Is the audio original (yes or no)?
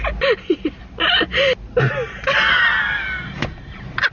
yes